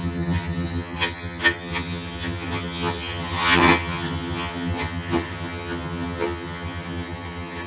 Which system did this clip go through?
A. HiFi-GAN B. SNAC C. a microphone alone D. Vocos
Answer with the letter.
A